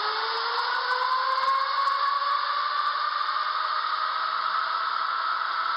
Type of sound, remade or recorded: recorded